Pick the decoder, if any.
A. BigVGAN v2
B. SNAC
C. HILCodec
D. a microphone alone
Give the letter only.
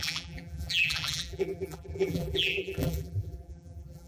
A